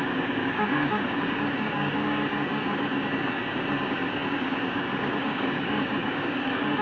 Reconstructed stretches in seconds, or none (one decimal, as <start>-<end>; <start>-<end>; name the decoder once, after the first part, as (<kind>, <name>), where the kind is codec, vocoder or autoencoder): 0.0-6.8 (codec, DAC)